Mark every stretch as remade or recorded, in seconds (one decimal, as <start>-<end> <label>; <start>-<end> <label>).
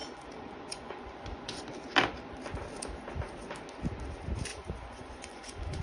0.0-1.6 remade; 1.6-4.5 recorded; 4.5-5.8 remade